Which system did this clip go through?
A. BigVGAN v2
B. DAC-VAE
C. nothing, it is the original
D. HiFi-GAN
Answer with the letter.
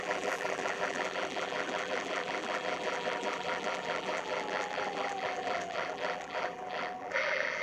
A